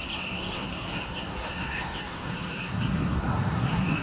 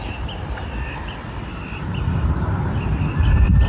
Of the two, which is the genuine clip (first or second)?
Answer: second